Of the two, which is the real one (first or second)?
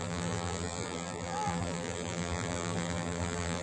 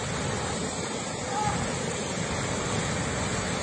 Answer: second